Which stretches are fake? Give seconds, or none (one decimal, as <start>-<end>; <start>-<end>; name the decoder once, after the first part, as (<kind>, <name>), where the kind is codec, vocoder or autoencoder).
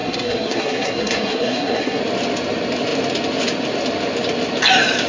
0.0-2.0 (codec, SNAC)